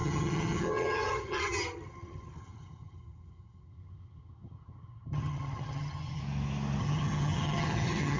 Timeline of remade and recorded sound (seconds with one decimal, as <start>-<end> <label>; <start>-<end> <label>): 0.0-6.2 remade; 6.2-6.8 recorded; 6.8-8.2 remade